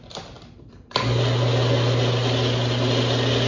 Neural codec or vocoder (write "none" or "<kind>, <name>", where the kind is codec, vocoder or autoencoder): none